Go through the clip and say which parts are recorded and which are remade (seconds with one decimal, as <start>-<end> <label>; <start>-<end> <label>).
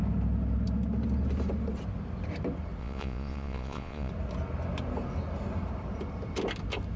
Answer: 0.0-2.8 recorded; 2.8-4.1 remade; 4.1-7.0 recorded